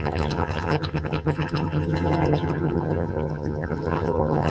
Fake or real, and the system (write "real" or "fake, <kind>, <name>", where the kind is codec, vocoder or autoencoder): fake, vocoder, HiFi-GAN